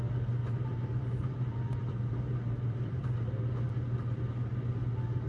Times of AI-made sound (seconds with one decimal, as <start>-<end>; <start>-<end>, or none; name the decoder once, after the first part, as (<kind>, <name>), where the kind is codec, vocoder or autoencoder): 0.4-3.5 (vocoder, BigVGAN v2)